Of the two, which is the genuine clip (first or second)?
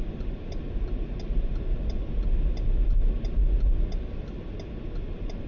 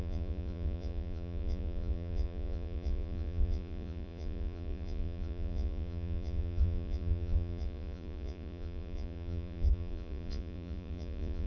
first